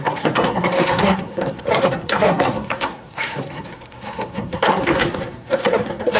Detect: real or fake fake